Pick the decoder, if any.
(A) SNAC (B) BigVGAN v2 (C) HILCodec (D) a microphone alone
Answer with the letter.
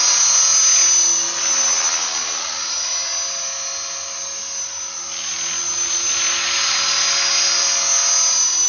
D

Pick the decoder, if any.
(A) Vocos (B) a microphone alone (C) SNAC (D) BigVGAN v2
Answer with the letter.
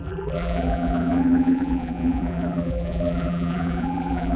D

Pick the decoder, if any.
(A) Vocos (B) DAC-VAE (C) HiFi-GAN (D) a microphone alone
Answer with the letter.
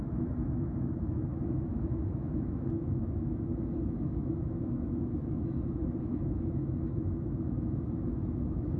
B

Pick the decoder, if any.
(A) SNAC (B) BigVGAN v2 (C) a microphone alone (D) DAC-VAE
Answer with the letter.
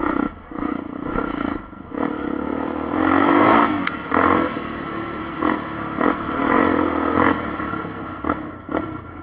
A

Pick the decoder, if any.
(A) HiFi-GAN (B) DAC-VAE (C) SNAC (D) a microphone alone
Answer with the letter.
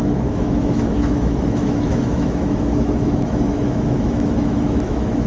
B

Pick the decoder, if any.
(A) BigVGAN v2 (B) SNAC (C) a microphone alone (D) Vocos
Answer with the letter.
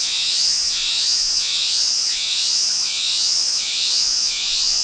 D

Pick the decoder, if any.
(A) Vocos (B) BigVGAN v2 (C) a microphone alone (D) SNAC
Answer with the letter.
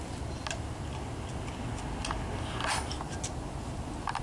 C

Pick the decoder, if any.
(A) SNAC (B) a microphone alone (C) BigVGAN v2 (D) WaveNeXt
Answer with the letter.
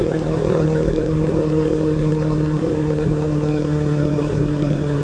A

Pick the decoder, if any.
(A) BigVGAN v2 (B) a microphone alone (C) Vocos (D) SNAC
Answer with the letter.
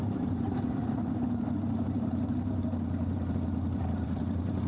A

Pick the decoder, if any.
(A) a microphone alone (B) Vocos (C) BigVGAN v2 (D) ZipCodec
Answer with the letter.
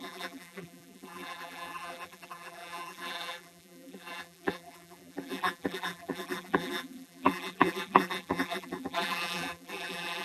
C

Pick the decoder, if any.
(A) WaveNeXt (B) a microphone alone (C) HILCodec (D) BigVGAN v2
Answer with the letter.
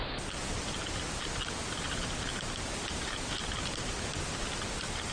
B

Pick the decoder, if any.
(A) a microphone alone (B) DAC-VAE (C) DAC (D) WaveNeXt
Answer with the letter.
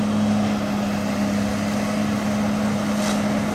A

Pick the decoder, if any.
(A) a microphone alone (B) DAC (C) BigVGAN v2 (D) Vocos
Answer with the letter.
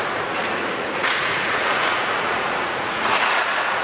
D